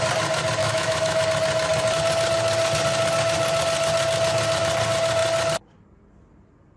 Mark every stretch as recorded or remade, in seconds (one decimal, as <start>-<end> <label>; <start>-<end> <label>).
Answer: 0.0-0.6 recorded; 0.6-1.2 remade; 1.2-6.8 recorded